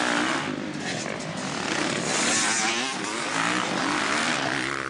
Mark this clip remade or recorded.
recorded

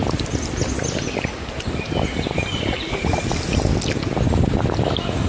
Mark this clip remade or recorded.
recorded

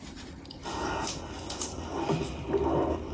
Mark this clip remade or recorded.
recorded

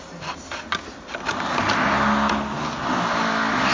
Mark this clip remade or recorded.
recorded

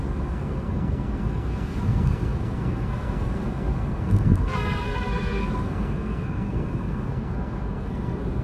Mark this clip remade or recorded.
remade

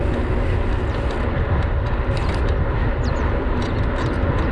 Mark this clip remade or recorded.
recorded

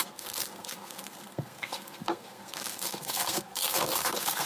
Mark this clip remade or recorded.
remade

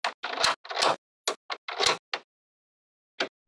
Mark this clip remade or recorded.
recorded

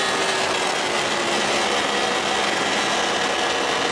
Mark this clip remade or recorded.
recorded